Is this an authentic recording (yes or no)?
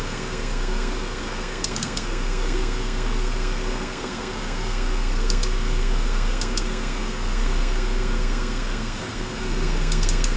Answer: no